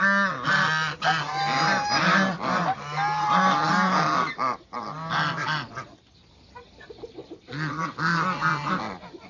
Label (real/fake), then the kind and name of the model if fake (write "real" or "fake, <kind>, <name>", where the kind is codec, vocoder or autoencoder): real